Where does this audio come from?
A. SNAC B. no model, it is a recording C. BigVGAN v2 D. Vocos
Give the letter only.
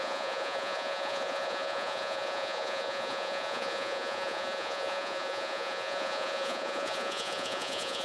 D